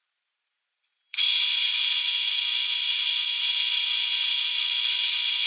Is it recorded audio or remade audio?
remade